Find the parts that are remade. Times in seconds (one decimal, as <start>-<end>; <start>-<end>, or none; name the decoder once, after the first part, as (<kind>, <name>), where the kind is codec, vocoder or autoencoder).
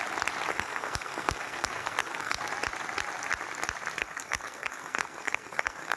0.5-2.4 (codec, SNAC); 4.0-6.0